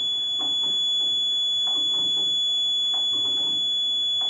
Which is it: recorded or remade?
recorded